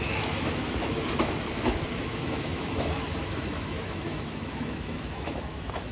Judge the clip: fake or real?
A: fake